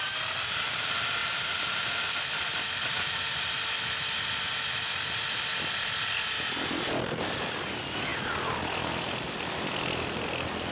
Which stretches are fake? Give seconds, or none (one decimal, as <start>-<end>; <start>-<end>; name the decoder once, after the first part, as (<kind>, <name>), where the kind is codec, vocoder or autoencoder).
1.2-3.4 (vocoder, BigVGAN v2)